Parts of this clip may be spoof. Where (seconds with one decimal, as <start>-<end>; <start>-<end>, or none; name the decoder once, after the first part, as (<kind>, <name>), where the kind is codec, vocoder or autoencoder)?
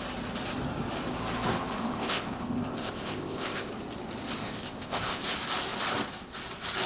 1.8-3.7 (codec, ZipCodec); 4.4-5.2